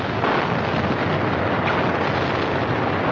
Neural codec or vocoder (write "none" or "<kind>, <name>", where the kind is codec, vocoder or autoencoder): none